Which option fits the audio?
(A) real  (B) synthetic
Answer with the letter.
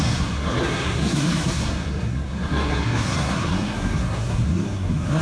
B